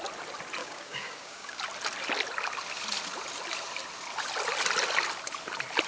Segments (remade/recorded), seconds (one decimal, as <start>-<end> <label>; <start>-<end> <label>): 0.0-0.6 recorded; 0.6-1.6 remade; 1.6-5.9 recorded